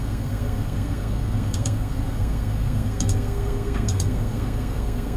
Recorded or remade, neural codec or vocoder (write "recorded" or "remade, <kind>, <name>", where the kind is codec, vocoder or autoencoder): remade, codec, SNAC